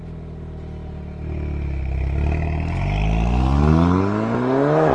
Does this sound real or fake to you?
real